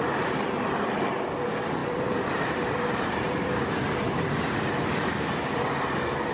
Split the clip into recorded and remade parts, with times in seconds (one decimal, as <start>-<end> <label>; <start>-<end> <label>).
0.0-1.8 recorded; 1.8-5.6 remade; 5.6-6.3 recorded